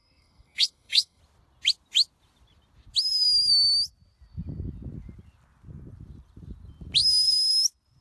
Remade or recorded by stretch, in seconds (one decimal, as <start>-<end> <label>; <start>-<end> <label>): 0.0-1.2 remade; 1.2-8.0 recorded

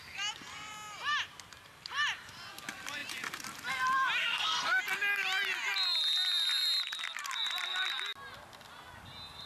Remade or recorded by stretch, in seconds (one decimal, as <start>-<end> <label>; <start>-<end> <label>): 0.0-4.2 recorded; 4.2-4.8 remade; 4.8-9.5 recorded

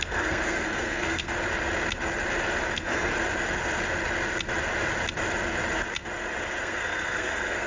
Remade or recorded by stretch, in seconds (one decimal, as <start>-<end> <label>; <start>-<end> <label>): 0.0-1.3 remade; 1.3-2.7 recorded; 2.7-3.1 remade; 3.1-6.6 recorded; 6.6-7.7 remade

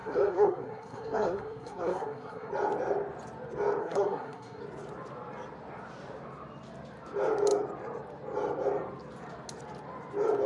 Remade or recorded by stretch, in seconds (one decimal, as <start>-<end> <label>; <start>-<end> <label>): 0.0-2.5 remade; 2.5-3.8 recorded; 3.8-4.6 remade; 4.6-10.5 recorded